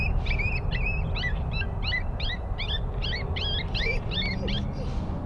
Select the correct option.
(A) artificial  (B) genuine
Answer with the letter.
B